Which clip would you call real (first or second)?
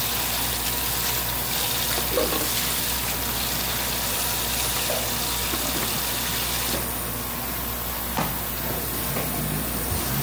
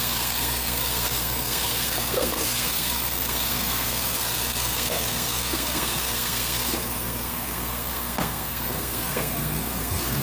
first